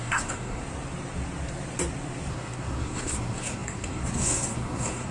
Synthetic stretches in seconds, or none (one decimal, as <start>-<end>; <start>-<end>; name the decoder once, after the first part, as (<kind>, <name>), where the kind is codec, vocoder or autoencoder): 0.0-0.6 (codec, SNAC); 2.3-5.1